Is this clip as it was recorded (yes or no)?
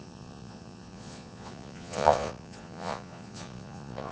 no